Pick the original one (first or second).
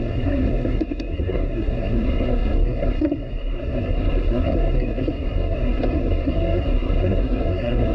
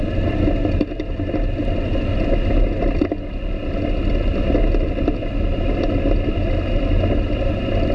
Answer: second